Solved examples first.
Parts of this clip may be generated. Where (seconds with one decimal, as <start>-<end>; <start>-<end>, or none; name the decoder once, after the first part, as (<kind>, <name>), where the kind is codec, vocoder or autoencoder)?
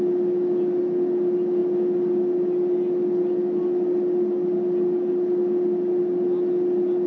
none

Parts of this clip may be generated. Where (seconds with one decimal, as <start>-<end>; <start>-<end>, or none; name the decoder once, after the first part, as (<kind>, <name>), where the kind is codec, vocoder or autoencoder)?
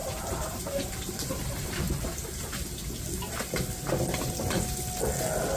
0.0-1.8 (vocoder, BigVGAN v2)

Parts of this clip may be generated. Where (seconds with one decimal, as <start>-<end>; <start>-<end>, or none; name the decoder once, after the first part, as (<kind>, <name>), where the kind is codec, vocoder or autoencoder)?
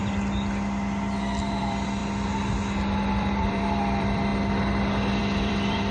1.6-2.0 (vocoder, BigVGAN v2); 3.1-4.3; 5.2-5.9